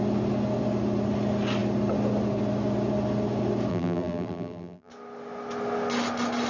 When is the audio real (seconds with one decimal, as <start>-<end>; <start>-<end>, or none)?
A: 0.0-3.7; 4.9-6.5